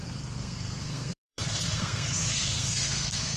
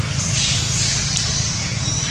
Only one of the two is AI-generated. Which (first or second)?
first